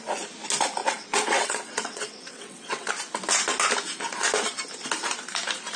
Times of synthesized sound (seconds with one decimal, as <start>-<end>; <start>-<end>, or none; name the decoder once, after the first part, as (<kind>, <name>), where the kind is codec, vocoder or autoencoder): 0.8-2.9 (vocoder, WaveNeXt)

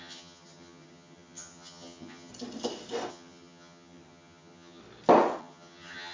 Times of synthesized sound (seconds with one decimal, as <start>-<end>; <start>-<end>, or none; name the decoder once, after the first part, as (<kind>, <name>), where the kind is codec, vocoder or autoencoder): 0.0-2.3 (vocoder, HiFi-GAN); 3.1-4.8; 5.4-6.1

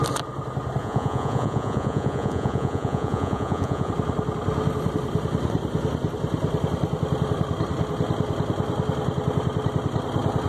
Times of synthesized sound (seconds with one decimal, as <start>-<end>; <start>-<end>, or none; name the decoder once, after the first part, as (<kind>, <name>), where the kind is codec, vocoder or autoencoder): 0.8-3.9 (vocoder, Vocos)

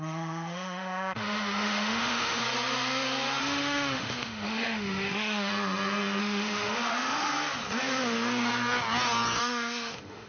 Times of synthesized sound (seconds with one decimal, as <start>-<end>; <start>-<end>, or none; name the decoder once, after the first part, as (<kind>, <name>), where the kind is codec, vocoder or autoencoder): 0.0-2.4 (autoencoder, DAC-VAE); 3.4-5.5; 6.2-7.3; 9.4-10.3

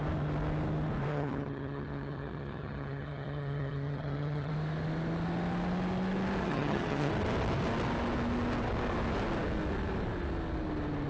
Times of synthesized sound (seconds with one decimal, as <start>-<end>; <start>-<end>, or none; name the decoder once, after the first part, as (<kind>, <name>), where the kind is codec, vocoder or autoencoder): 1.1-4.5 (vocoder, HiFi-GAN); 6.4-7.1

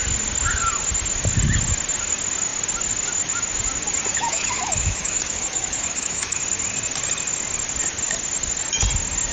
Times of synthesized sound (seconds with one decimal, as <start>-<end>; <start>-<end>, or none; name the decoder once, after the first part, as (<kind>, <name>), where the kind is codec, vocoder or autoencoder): 4.1-6.4 (autoencoder, DAC-VAE)